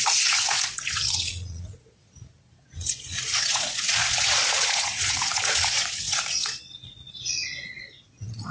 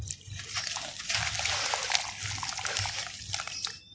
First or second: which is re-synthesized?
first